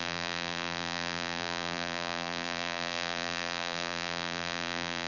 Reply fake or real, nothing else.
fake